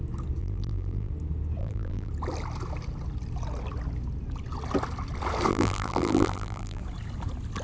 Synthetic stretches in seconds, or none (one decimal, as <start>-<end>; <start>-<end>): 0.4-1.1; 1.6-2.1; 5.5-6.8